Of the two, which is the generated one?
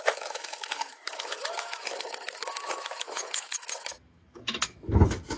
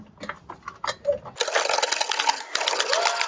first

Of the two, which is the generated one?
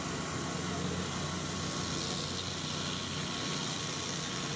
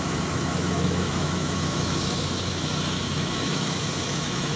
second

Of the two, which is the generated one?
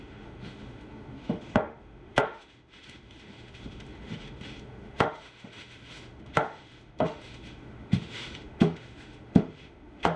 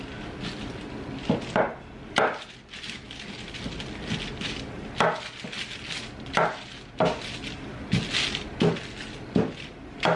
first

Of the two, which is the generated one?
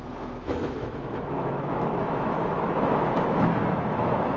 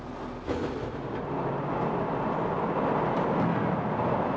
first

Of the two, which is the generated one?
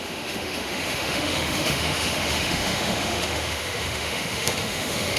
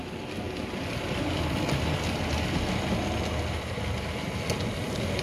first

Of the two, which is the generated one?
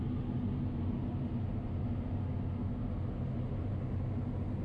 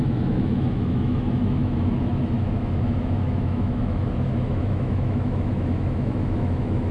second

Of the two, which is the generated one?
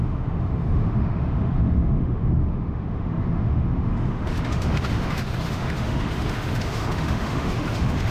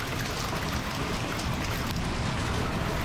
first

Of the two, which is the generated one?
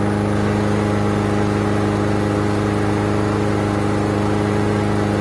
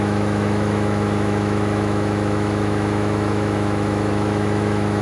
second